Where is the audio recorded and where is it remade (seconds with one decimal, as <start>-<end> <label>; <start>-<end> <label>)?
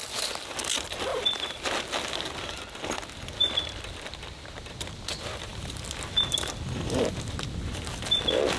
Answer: 0.0-8.6 recorded